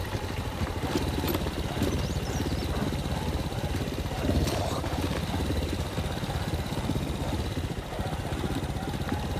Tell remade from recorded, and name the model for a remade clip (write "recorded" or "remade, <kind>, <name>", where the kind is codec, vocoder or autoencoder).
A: remade, vocoder, BigVGAN v2